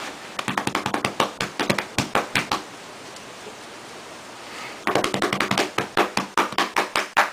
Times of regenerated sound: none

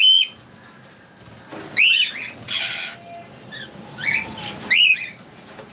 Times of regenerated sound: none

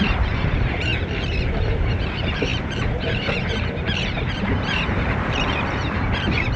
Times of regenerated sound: 0.0-0.9 (vocoder, BigVGAN v2); 1.5-6.6

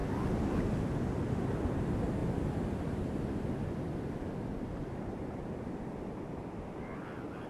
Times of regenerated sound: 2.2-6.6 (vocoder, BigVGAN v2)

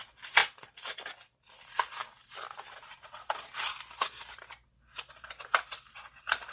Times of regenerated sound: none

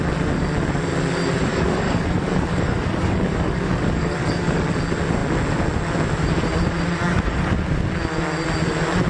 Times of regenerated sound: 1.5-4.8 (codec, DAC); 7.0-7.5

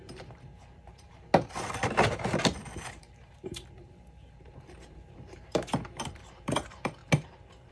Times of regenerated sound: 0.0-1.3 (vocoder, BigVGAN v2); 2.8-7.7